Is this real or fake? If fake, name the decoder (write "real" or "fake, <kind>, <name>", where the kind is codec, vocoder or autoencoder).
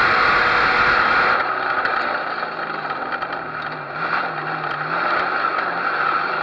real